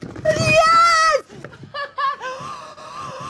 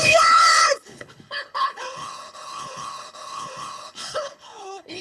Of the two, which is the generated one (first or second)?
second